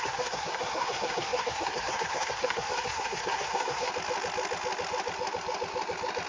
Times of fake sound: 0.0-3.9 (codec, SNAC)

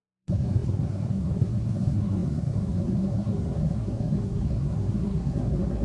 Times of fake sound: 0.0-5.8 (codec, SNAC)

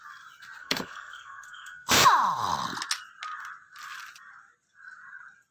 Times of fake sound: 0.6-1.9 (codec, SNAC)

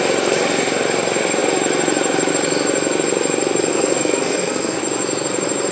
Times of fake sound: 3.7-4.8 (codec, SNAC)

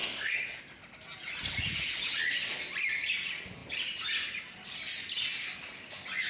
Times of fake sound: 0.0-0.6 (codec, SNAC)

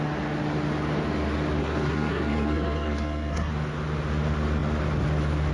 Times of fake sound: 1.6-3.5 (codec, SNAC)

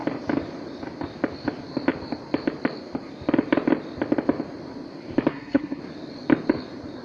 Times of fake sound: 5.3-5.8 (codec, SNAC)